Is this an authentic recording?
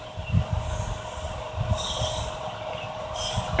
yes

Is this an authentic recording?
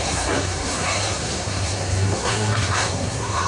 no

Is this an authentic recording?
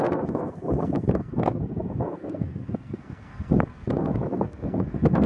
no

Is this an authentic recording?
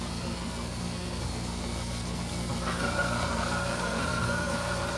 no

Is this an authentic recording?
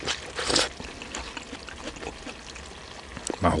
yes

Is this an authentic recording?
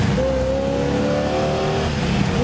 yes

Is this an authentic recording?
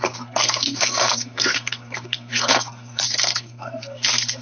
no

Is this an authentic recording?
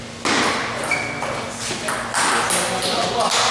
yes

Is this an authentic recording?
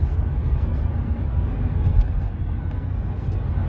no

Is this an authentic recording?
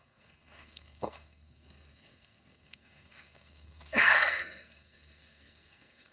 no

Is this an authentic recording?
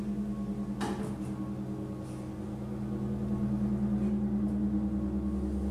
yes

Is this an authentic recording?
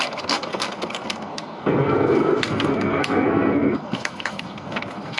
no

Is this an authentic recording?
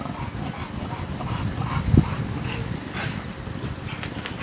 yes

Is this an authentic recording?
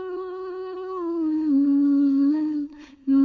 no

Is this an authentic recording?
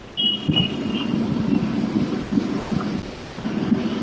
yes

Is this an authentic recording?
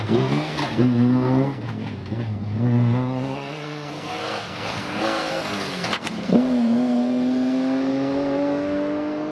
no